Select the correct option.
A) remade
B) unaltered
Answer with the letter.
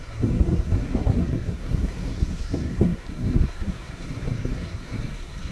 A